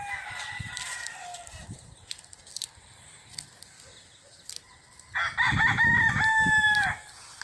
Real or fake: real